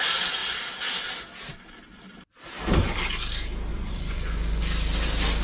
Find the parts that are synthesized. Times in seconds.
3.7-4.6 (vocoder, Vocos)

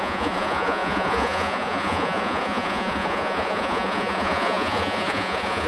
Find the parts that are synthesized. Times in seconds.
0.0-5.7 (vocoder, Vocos)

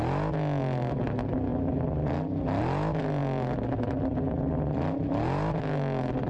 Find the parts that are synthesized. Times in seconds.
none

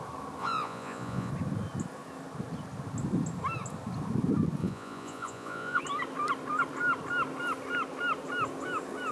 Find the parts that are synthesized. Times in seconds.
0.4-1.3 (vocoder, Vocos); 4.6-5.8

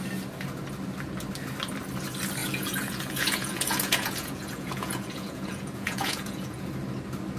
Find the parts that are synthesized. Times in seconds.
2.4-6.7 (vocoder, Vocos)

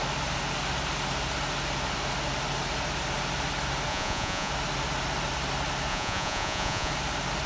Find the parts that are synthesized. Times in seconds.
3.9-4.5 (vocoder, Vocos); 5.9-6.9

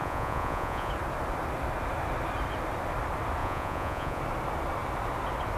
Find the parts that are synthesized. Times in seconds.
0.0-0.9 (vocoder, Vocos); 3.4-4.2

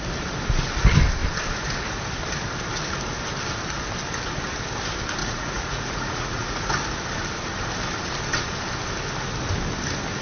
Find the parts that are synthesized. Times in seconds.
5.2-6.7 (vocoder, Vocos)